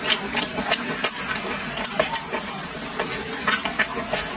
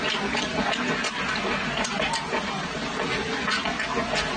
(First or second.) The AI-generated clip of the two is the first